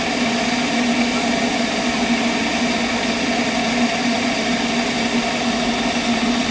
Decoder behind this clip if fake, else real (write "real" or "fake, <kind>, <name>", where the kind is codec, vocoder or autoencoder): real